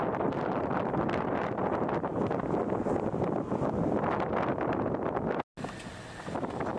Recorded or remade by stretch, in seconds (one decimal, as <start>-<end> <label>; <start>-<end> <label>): 0.0-6.8 recorded